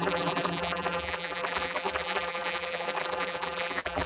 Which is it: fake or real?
fake